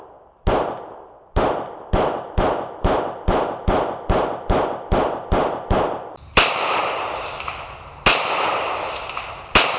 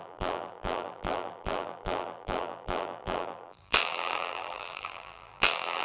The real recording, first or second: first